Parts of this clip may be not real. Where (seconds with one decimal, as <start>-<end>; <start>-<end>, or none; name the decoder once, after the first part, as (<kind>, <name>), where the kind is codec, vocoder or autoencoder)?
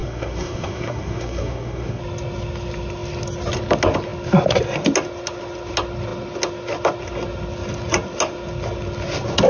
0.0-2.0 (codec, SNAC)